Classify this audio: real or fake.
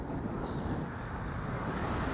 real